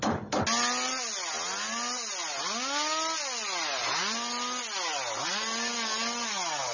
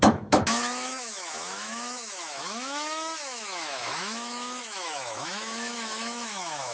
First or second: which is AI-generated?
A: second